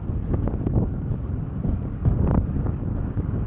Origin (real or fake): fake